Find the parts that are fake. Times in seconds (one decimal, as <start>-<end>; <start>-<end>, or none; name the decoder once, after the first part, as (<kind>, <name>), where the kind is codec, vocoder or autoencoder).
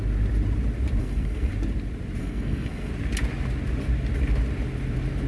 1.0-1.5 (codec, SNAC); 2.2-2.9